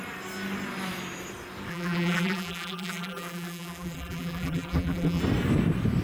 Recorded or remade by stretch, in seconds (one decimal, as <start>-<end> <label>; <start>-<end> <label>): 0.0-1.7 recorded; 1.7-5.2 remade; 5.2-6.0 recorded